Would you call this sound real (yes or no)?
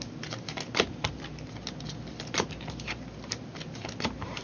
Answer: yes